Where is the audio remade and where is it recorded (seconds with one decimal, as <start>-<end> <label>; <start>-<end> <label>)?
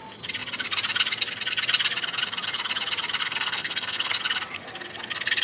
0.0-3.2 recorded; 3.2-4.1 remade; 4.1-5.4 recorded